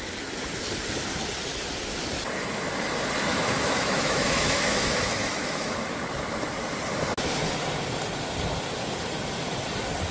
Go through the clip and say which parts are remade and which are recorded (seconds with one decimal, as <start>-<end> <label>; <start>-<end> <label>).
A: 0.0-3.3 recorded; 3.3-5.8 remade; 5.8-10.1 recorded